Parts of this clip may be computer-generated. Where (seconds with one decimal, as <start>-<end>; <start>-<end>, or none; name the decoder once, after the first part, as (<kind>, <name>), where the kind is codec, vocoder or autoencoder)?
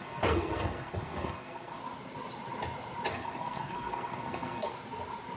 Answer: 0.0-1.8 (codec, SNAC); 3.1-4.7